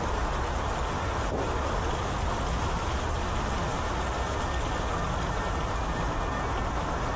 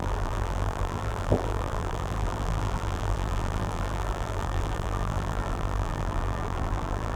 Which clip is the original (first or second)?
first